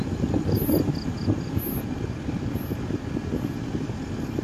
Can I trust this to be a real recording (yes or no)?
yes